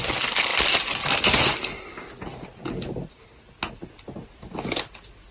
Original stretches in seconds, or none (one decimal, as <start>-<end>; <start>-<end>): 0.0-5.3